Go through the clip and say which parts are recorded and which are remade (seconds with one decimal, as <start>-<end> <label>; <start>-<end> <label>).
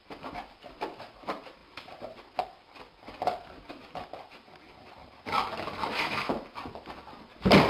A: 0.0-5.8 recorded; 5.8-6.3 remade; 6.3-7.7 recorded